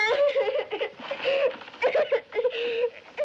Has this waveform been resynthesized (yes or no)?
no